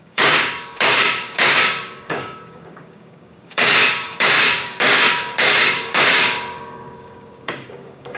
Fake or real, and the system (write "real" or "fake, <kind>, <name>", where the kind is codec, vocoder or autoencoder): fake, codec, DAC